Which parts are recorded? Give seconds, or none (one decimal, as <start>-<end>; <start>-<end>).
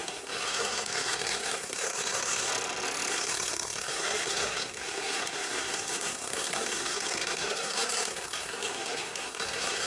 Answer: 2.5-3.1